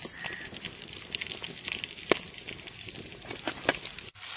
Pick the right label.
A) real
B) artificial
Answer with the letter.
A